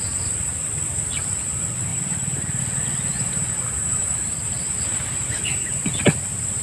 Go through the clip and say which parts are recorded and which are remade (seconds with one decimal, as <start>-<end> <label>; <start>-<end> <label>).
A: 0.0-1.9 recorded; 1.9-2.6 remade; 2.6-3.1 recorded; 3.1-5.7 remade; 5.7-6.6 recorded